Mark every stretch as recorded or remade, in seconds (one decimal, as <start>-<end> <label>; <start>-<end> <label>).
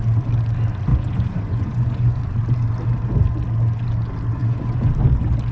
0.0-0.9 recorded; 0.9-2.2 remade; 2.2-4.4 recorded; 4.4-4.9 remade; 4.9-5.5 recorded